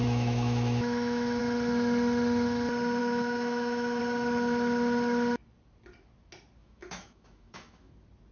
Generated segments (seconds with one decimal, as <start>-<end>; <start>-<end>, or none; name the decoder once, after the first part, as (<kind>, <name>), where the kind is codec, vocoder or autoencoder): 0.0-1.4 (autoencoder, DAC-VAE); 3.0-4.0; 6.6-7.9